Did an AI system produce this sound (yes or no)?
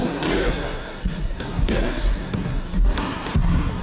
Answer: yes